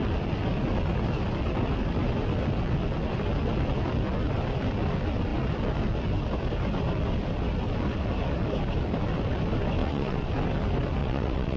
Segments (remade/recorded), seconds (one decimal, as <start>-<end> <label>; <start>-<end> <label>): 0.0-9.8 recorded; 9.8-10.3 remade; 10.3-11.0 recorded; 11.0-11.6 remade